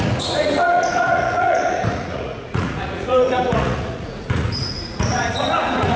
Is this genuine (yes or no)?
no